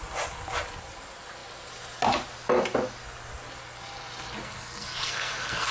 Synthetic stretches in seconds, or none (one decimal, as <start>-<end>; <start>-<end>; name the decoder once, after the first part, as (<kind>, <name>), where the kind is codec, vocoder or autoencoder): 4.4-5.7 (codec, SNAC)